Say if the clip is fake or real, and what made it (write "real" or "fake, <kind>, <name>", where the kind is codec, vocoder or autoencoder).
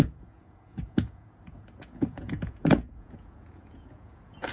fake, vocoder, Vocos